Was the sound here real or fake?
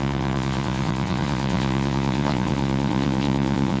fake